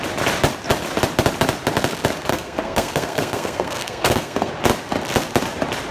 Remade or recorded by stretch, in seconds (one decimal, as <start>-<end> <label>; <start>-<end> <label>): 0.0-2.3 recorded; 2.3-4.5 remade; 4.5-5.9 recorded